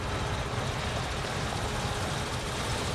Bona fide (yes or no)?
yes